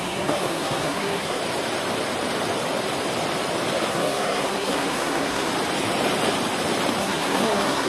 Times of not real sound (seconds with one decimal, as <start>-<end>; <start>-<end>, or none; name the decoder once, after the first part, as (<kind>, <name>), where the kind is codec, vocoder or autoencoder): 0.0-1.4 (codec, SNAC); 3.9-5.5; 7.0-7.9